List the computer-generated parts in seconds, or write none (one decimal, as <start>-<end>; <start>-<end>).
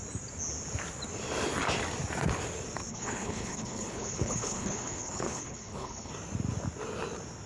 2.9-6.1